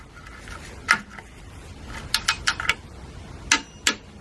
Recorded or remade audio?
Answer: recorded